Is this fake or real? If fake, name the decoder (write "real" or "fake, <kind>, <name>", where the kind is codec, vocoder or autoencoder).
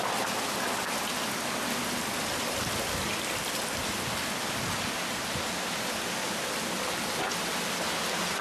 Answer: real